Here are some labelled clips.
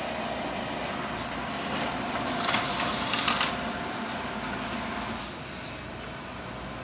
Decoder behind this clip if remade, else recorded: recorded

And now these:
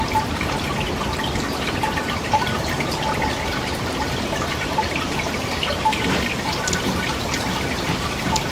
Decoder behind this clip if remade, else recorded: remade, vocoder, BigVGAN v2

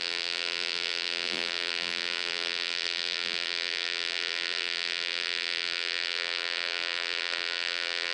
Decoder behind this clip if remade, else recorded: remade, vocoder, BigVGAN v2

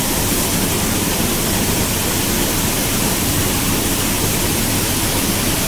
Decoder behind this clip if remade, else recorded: remade, vocoder, BigVGAN v2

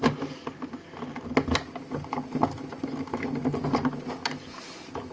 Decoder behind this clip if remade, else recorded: recorded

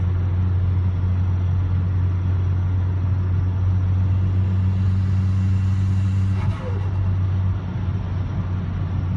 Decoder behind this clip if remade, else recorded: recorded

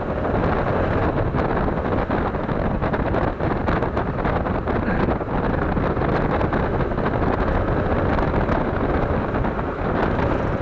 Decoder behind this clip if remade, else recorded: recorded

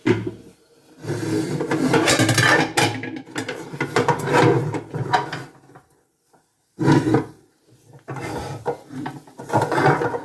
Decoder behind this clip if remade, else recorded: recorded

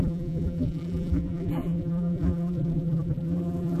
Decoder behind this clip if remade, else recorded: remade, vocoder, BigVGAN v2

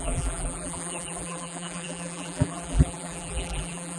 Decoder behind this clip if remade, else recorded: remade, vocoder, BigVGAN v2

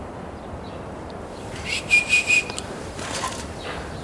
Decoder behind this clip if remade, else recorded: remade, vocoder, BigVGAN v2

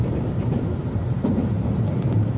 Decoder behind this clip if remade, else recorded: remade, vocoder, BigVGAN v2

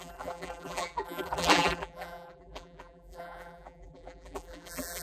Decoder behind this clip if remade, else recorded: remade, vocoder, BigVGAN v2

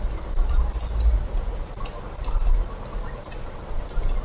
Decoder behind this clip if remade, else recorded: recorded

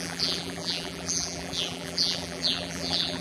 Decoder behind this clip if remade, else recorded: remade, vocoder, BigVGAN v2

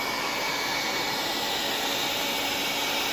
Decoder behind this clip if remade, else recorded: recorded